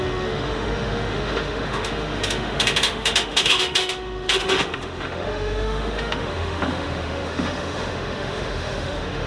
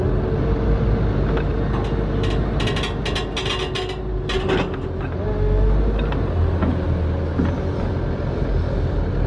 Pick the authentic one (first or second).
second